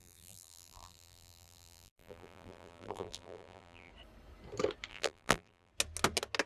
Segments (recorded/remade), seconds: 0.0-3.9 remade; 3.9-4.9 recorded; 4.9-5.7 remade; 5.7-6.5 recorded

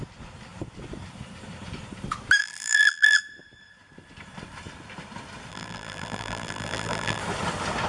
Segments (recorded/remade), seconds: 0.0-2.4 recorded; 2.4-3.2 remade; 3.2-5.5 recorded; 5.5-7.2 remade; 7.2-7.9 recorded

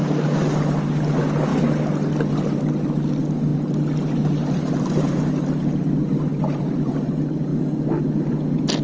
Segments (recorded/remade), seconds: 0.0-6.3 recorded; 6.3-6.9 remade; 6.9-8.8 recorded

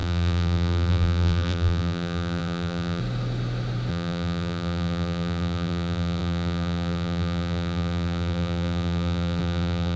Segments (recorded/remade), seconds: 0.0-3.0 remade; 3.0-3.9 recorded; 3.9-10.0 remade